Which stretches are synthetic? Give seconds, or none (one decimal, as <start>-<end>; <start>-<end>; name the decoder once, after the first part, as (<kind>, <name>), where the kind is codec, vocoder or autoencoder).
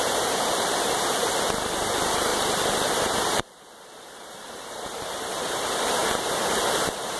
0.0-2.3 (vocoder, BigVGAN v2); 3.0-6.0; 6.6-7.2